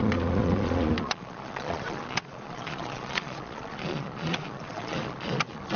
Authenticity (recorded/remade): remade